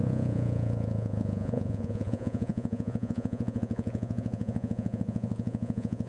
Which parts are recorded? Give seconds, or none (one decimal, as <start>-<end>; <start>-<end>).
none